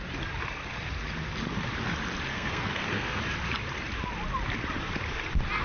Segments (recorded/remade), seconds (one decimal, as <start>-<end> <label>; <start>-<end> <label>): 0.0-2.3 recorded; 2.3-3.2 remade; 3.2-5.6 recorded